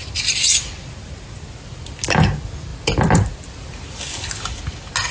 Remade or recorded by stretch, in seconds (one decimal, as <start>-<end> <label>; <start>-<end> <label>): 0.0-2.2 recorded; 2.2-2.7 remade; 2.7-5.1 recorded